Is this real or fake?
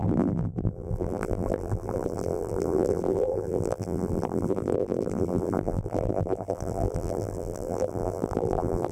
fake